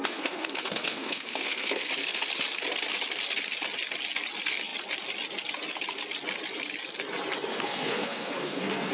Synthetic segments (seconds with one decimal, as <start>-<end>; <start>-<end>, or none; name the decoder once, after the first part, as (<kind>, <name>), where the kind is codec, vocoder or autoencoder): 0.0-1.9 (codec, SNAC); 7.5-8.9